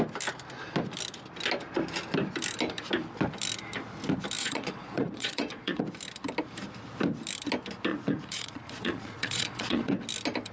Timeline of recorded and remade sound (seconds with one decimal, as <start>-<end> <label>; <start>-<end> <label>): 0.0-4.4 recorded; 4.4-5.8 remade; 5.8-7.9 recorded; 7.9-10.0 remade; 10.0-10.5 recorded